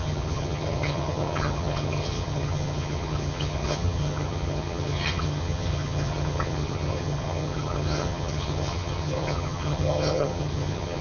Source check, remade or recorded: remade